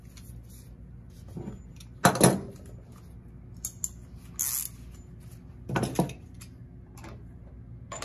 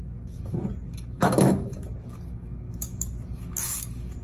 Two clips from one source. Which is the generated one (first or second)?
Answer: second